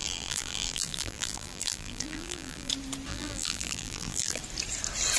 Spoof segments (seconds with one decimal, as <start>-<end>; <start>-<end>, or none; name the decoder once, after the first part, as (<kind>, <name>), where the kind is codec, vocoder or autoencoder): 0.0-2.7 (vocoder, BigVGAN v2); 3.1-4.4